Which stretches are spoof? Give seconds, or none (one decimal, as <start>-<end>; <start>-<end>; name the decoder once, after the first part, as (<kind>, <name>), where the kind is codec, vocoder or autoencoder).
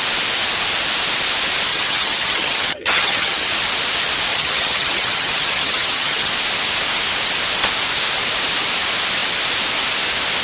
1.7-3.5 (vocoder, HiFi-GAN); 4.3-6.3